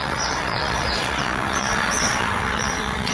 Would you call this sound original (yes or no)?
no